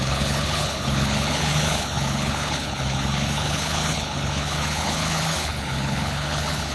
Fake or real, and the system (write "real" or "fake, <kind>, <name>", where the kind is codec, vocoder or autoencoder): fake, codec, HILCodec